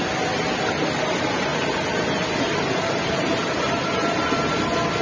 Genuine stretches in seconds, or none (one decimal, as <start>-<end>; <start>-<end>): 0.0-5.0